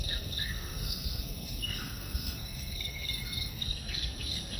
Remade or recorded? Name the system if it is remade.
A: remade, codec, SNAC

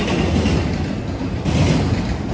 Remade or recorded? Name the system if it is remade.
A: recorded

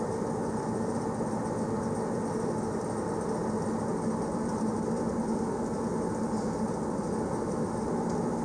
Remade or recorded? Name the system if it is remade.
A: recorded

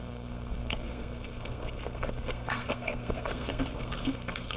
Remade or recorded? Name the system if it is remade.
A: remade, codec, SNAC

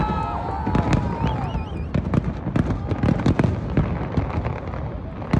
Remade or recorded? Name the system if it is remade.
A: recorded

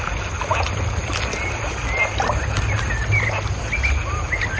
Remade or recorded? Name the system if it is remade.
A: recorded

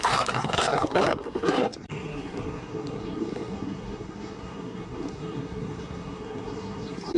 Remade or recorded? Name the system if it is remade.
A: remade, codec, SNAC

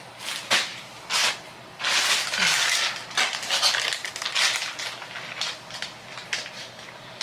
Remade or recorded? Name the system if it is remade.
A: recorded